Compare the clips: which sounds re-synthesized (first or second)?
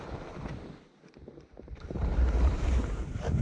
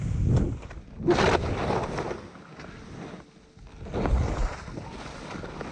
first